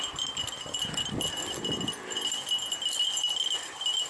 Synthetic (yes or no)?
no